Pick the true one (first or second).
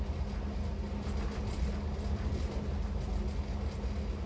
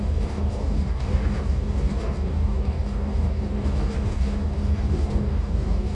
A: first